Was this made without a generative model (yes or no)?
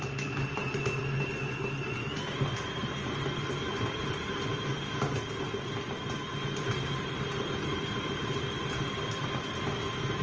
yes